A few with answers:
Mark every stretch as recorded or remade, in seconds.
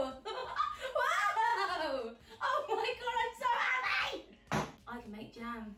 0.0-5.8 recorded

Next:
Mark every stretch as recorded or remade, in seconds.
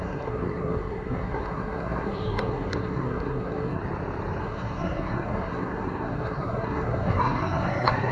0.0-3.8 remade; 3.8-4.4 recorded; 4.4-8.1 remade